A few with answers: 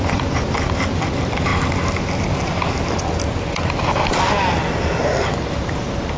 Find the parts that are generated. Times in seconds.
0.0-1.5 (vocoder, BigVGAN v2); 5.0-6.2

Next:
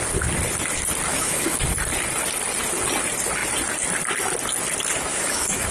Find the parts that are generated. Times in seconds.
1.1-1.6 (autoencoder, DAC-VAE); 5.1-5.7

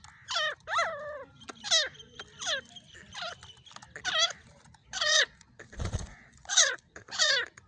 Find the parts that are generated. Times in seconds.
4.8-7.3 (vocoder, Vocos)